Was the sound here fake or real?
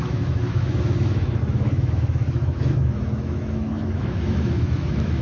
fake